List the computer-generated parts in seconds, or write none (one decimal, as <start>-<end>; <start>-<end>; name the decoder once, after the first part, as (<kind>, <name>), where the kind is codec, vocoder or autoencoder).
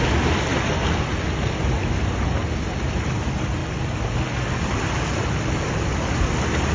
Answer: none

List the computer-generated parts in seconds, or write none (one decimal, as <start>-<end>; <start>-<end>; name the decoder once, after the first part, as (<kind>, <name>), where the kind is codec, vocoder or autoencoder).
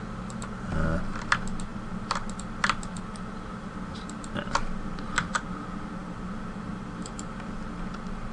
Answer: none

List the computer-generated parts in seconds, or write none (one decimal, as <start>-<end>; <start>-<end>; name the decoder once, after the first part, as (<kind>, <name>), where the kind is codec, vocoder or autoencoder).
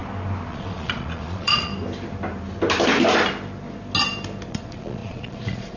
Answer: 0.5-1.7 (vocoder, Vocos); 4.5-5.8